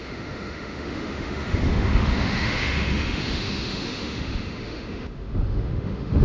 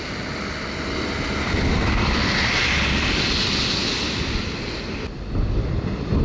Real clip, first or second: second